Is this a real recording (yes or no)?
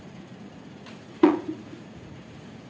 no